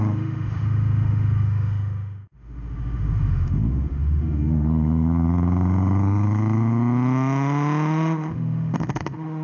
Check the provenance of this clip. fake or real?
fake